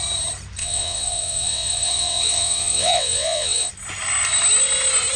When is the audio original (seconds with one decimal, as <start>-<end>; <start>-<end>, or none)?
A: 0.0-0.6; 3.7-5.2

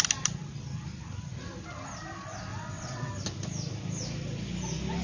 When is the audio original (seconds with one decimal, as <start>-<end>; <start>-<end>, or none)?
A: 0.0-2.5; 3.1-5.0

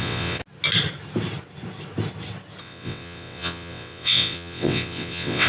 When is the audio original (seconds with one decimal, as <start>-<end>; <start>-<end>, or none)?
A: 0.4-2.6

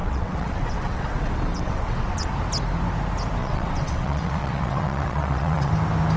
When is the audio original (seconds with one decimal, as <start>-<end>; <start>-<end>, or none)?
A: 2.3-3.4; 5.7-6.2

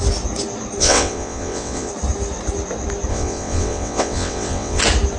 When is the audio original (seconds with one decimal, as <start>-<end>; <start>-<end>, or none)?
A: 0.0-0.8; 1.9-3.1; 4.8-5.2

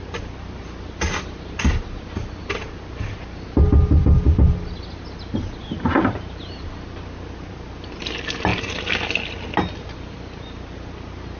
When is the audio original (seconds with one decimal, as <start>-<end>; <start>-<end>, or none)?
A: 0.0-11.4